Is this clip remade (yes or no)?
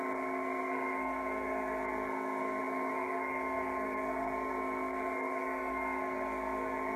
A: yes